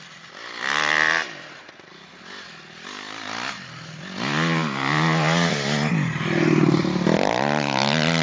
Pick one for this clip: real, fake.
real